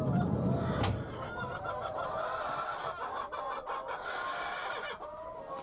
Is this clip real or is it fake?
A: real